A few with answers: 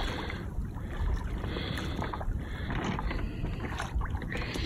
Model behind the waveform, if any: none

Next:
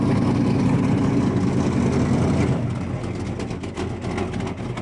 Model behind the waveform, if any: none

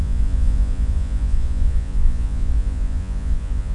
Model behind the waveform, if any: vocoder, Vocos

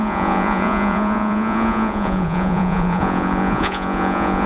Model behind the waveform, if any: vocoder, Vocos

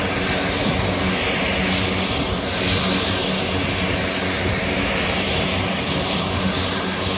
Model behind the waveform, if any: none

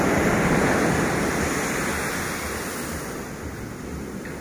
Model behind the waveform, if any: none